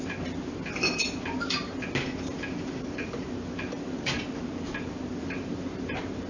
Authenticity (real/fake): real